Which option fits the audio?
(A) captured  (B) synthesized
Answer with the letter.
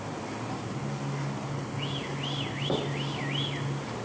A